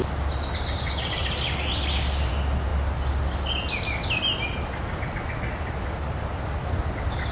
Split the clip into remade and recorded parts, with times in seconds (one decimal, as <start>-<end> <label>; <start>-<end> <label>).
0.0-7.3 recorded